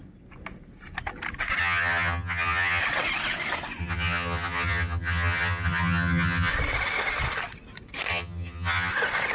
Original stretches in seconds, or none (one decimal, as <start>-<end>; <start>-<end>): 0.0-1.6; 2.8-3.8; 6.5-8.1; 8.9-9.3